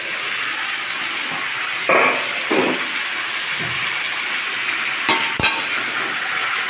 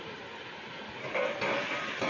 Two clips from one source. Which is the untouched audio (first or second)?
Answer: first